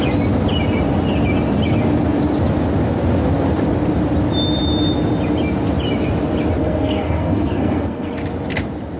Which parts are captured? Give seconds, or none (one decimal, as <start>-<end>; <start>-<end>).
0.0-6.6; 8.1-9.0